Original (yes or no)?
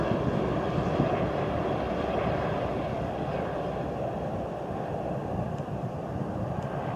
yes